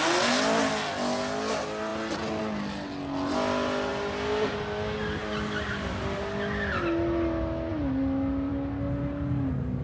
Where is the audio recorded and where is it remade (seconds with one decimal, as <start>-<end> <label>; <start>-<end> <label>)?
0.0-9.8 recorded